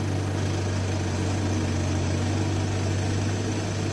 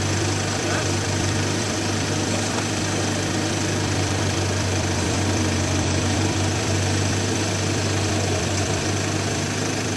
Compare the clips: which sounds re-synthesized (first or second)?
second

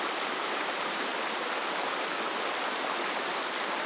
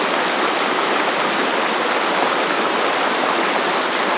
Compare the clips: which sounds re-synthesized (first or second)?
first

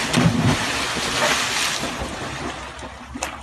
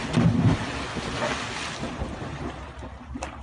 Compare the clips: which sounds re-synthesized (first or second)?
second